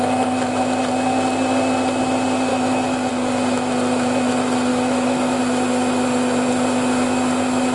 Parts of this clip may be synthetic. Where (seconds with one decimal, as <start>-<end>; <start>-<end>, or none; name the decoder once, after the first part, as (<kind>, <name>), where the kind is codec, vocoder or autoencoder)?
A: 2.5-3.1 (autoencoder, DAC-VAE); 4.7-5.4